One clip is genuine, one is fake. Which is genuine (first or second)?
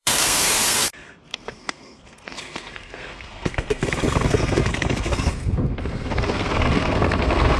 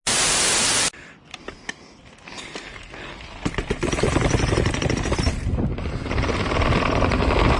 second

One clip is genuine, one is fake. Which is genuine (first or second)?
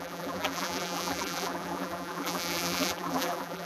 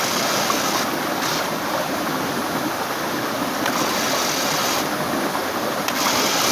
second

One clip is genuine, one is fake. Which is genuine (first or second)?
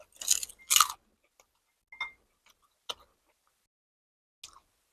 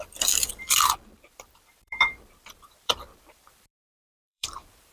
first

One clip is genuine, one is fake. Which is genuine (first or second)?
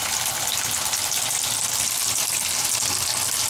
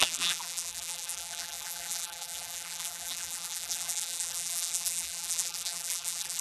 first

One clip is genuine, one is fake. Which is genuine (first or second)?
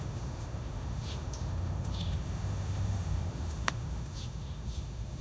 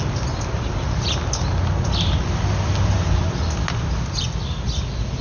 second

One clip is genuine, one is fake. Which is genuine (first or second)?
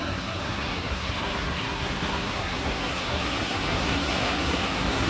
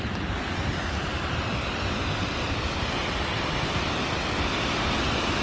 second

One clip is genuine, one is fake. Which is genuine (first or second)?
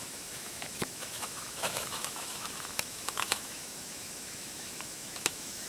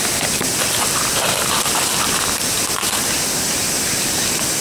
second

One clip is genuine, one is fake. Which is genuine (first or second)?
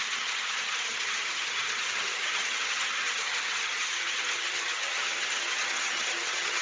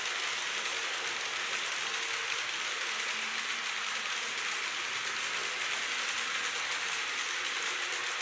second